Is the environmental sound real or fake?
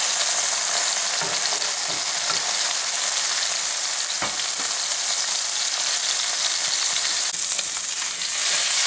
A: real